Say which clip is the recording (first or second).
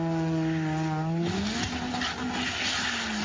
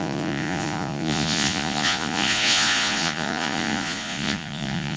first